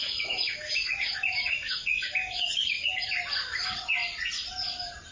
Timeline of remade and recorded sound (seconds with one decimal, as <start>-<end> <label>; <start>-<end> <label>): 0.0-3.1 remade; 3.1-5.1 recorded